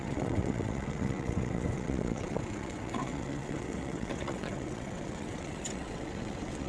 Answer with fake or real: fake